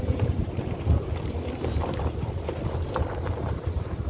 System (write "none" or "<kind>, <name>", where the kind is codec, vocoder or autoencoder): vocoder, BigVGAN v2